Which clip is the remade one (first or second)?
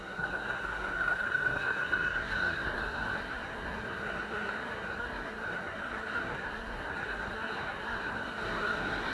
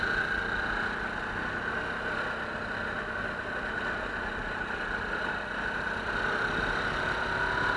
first